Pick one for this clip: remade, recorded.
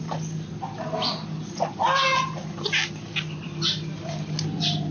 recorded